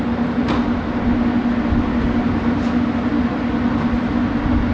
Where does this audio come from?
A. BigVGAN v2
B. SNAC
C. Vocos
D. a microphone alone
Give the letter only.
D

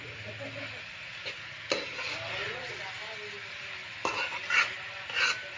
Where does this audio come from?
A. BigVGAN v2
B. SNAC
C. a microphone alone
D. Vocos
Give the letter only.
C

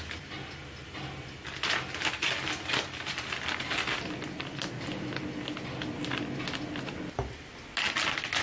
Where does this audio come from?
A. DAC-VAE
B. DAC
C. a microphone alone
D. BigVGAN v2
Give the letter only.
C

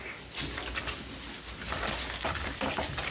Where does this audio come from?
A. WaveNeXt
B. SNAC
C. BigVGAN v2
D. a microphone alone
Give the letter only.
D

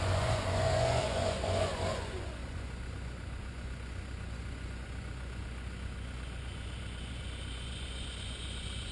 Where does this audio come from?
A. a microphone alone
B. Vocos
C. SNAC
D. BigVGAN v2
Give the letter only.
B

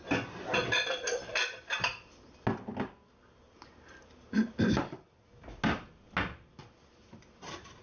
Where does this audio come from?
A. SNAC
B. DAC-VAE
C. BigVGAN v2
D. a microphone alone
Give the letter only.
D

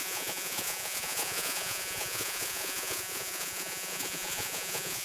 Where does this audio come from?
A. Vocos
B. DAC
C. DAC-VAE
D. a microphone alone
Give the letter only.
A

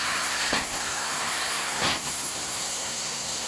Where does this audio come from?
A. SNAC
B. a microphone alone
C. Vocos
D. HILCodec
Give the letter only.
A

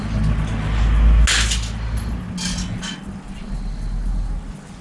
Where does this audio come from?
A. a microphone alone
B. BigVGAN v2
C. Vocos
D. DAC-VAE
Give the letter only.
A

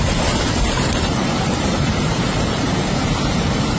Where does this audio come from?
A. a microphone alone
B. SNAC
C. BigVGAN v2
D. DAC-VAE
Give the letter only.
C